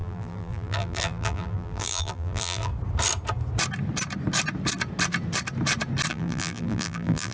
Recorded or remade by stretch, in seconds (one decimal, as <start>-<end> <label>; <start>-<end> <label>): 0.0-2.7 remade; 2.7-6.1 recorded; 6.1-7.3 remade